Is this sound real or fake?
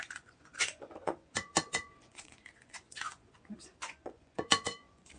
fake